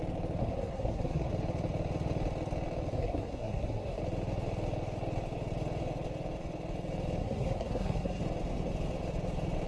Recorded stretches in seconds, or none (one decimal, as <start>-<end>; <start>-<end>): 0.0-0.4; 1.3-2.9; 4.0-7.2; 8.2-9.7